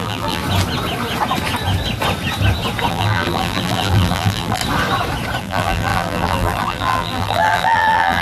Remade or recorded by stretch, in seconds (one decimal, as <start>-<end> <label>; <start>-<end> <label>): 0.0-0.4 remade; 0.4-2.9 recorded; 2.9-4.6 remade; 4.6-5.4 recorded; 5.4-8.2 remade